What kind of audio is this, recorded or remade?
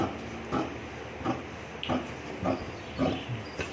recorded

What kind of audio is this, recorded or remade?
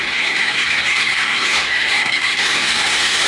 remade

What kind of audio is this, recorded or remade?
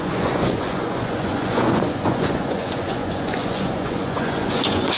remade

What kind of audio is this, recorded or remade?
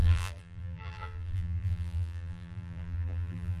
remade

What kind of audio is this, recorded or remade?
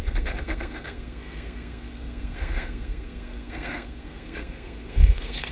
remade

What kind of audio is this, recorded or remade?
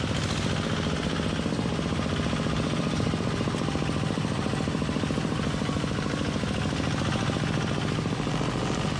recorded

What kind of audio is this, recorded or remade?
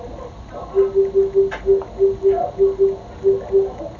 recorded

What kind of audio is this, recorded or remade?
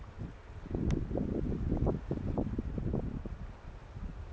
remade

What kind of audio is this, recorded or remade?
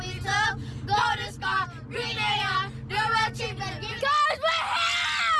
recorded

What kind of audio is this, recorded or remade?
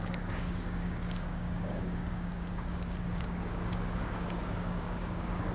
remade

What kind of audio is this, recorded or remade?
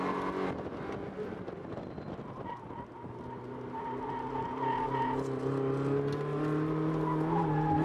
recorded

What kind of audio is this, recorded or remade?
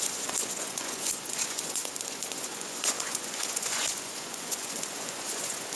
remade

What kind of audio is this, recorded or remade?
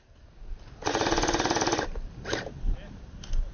recorded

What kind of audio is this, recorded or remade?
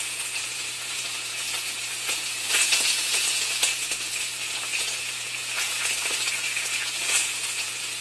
remade